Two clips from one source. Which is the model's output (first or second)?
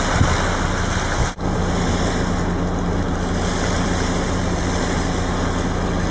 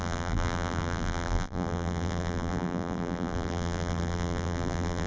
second